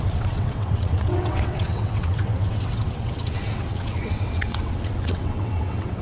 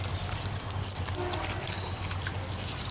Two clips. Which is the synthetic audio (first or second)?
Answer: first